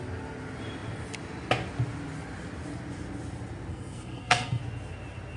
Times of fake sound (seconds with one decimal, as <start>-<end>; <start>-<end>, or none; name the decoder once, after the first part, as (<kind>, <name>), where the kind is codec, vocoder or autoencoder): 3.7-4.6 (codec, SNAC)